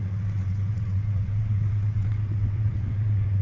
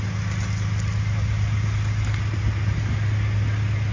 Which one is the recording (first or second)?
second